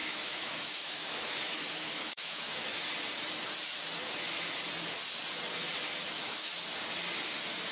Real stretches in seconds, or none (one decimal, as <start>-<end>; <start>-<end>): 2.8-6.1; 6.5-7.7